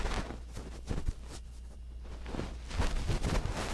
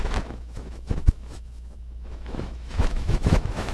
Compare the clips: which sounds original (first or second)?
first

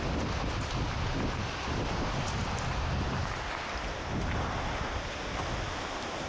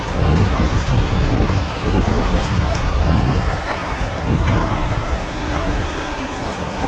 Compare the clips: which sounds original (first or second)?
first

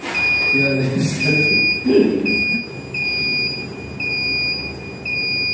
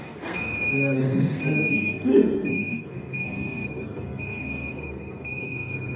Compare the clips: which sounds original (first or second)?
first